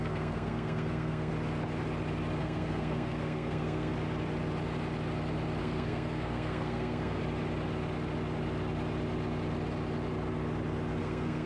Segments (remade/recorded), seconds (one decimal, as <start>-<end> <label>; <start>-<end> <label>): 0.0-1.3 remade; 1.3-2.4 recorded; 2.4-3.9 remade; 3.9-5.6 recorded; 5.6-7.2 remade; 7.2-11.0 recorded; 11.0-11.5 remade